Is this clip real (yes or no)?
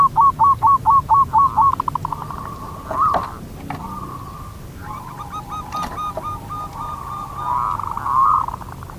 yes